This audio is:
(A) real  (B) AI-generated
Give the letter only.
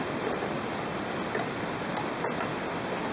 B